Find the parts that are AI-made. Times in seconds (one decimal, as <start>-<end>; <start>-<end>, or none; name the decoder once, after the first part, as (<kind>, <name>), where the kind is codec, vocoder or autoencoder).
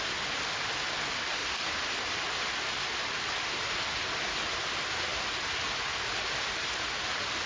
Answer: none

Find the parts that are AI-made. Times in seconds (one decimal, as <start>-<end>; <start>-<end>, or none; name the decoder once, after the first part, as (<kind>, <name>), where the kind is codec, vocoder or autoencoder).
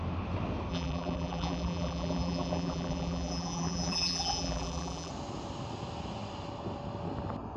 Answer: 0.7-5.1 (vocoder, BigVGAN v2)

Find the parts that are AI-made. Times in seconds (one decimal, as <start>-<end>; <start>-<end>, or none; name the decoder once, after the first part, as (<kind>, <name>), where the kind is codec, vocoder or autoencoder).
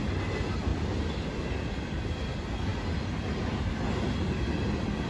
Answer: none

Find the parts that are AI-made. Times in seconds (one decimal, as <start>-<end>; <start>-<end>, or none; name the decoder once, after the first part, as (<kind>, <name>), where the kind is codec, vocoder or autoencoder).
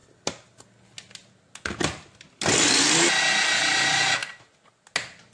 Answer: none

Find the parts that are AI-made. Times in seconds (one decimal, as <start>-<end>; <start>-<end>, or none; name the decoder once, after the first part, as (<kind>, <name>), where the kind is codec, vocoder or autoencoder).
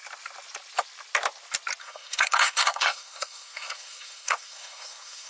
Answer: 1.8-5.3 (codec, SNAC)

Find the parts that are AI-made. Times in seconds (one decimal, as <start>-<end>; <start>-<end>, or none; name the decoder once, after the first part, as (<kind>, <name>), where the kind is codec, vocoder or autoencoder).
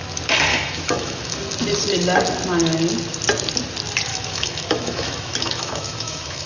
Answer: 0.5-1.4 (autoencoder, DAC-VAE); 4.1-6.5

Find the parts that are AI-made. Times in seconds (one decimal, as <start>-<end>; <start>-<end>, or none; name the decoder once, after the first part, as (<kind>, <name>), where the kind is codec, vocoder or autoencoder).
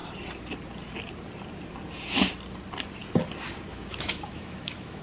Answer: 3.7-5.0 (autoencoder, DAC-VAE)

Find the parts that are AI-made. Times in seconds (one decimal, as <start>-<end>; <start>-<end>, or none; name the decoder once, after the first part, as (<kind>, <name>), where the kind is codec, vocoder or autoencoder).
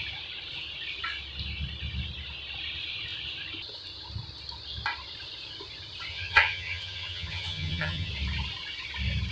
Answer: 6.1-8.1 (vocoder, HiFi-GAN)